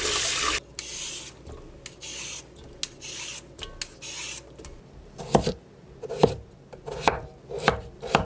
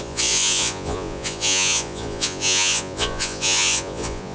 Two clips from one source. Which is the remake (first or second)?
second